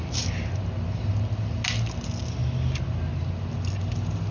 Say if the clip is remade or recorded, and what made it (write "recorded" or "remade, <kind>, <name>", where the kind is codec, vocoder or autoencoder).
recorded